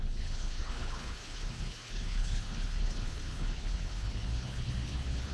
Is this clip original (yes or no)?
no